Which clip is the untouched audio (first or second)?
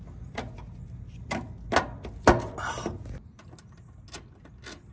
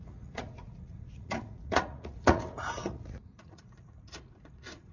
first